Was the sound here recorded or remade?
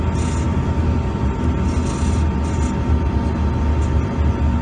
recorded